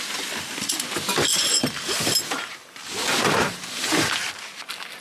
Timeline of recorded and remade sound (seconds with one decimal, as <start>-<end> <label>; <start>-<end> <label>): 0.0-1.3 recorded; 1.3-4.3 remade; 4.3-5.0 recorded